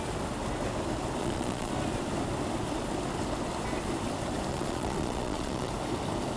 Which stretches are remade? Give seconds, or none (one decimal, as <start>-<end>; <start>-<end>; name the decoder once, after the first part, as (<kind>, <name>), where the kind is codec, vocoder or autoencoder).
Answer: 1.2-1.7 (vocoder, Vocos); 4.5-5.7